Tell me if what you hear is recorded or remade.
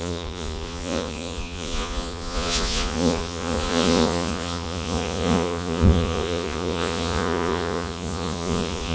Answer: remade